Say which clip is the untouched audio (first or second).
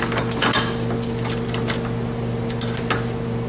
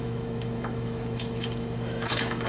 first